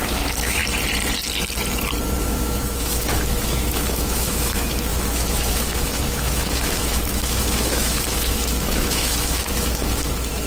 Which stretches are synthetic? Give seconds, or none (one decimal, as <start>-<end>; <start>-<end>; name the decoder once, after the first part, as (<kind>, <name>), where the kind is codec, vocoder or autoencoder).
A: 0.0-0.6 (autoencoder, DAC-VAE); 2.2-10.5